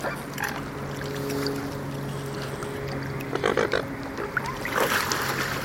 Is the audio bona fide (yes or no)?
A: yes